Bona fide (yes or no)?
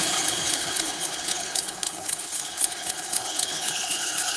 no